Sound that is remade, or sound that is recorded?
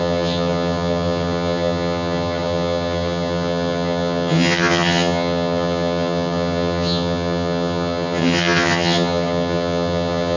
remade